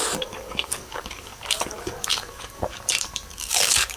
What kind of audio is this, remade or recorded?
remade